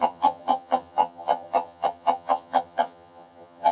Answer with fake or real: fake